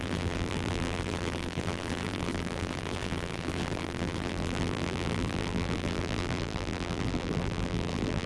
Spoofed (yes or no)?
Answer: yes